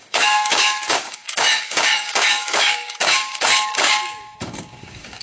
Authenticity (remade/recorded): remade